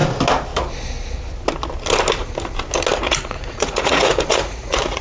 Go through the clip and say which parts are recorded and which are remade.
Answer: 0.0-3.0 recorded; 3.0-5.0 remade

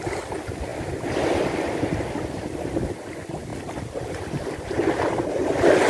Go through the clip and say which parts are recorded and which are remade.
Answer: 0.0-5.9 recorded

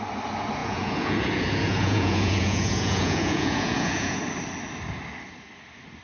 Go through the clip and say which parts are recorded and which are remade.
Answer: 0.0-0.6 recorded; 0.6-4.2 remade; 4.2-6.0 recorded

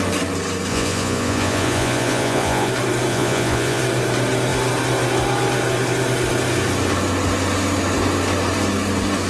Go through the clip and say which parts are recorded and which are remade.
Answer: 0.0-0.7 recorded; 0.7-2.7 remade; 2.7-3.1 recorded; 3.1-3.8 remade; 3.8-9.3 recorded